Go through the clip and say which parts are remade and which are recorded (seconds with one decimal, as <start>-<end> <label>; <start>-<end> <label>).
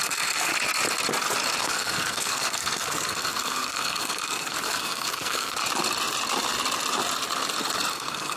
0.0-0.5 remade; 0.5-1.6 recorded; 1.6-5.6 remade; 5.6-7.9 recorded; 7.9-8.4 remade